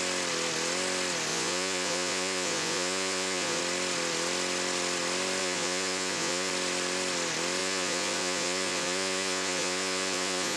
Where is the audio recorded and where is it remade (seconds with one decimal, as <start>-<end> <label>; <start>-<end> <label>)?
0.0-1.3 recorded; 1.3-3.6 remade; 3.6-5.4 recorded; 5.4-6.5 remade; 6.5-7.6 recorded; 7.6-10.6 remade